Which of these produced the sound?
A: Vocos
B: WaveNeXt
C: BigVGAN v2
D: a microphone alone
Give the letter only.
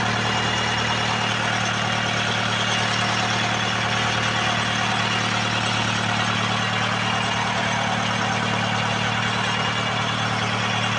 D